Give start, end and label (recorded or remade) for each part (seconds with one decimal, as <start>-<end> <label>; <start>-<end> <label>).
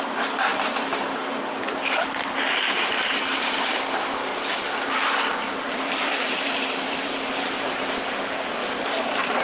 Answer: 0.0-4.3 recorded; 4.3-8.0 remade; 8.0-8.6 recorded; 8.6-9.4 remade